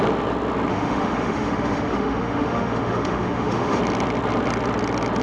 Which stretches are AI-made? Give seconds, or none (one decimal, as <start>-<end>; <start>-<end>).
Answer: 0.7-3.8